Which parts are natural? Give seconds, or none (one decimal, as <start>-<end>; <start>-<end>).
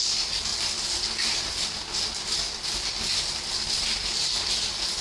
0.0-5.0